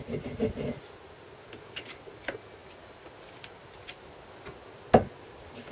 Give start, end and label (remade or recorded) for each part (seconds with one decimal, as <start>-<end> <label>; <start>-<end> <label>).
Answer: 0.0-5.7 recorded

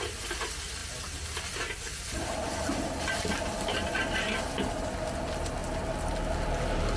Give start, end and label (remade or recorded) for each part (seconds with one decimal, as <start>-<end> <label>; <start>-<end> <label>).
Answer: 0.0-5.6 recorded; 5.6-7.0 remade